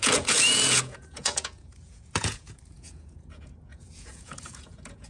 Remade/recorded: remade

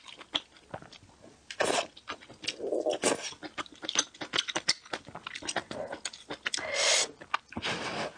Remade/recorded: recorded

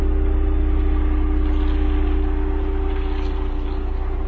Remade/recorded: recorded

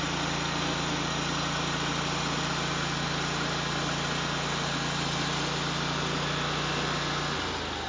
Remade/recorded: recorded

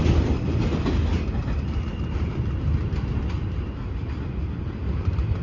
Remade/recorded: recorded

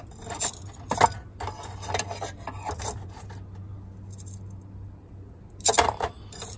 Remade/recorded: recorded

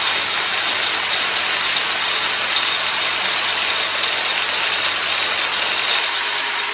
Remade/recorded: recorded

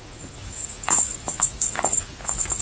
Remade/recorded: remade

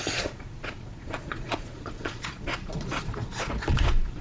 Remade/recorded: remade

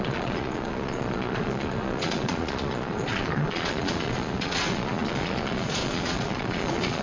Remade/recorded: remade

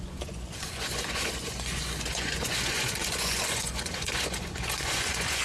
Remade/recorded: remade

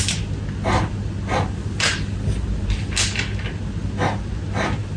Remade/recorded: recorded